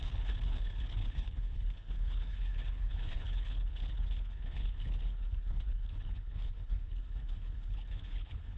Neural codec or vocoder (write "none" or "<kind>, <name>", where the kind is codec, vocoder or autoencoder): codec, HILCodec